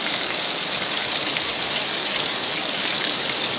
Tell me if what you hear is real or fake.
fake